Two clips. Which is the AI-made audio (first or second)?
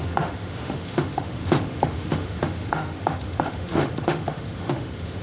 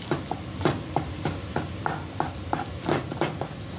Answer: first